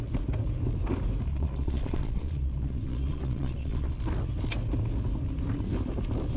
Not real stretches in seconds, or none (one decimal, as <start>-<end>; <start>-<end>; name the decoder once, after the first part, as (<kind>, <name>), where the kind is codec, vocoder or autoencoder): 1.3-4.0 (vocoder, Vocos)